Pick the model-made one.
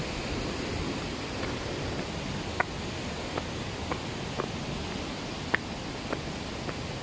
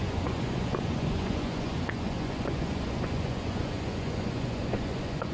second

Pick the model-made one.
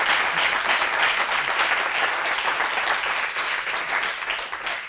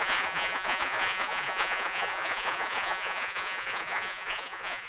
second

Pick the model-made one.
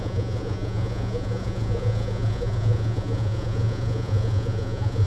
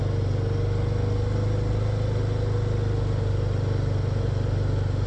first